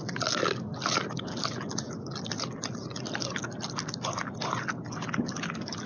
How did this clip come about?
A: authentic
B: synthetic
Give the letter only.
A